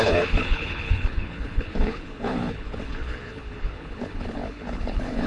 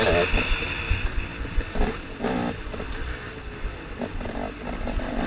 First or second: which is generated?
first